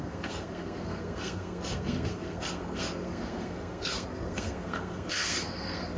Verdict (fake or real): fake